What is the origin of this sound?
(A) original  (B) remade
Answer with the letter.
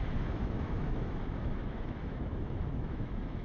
B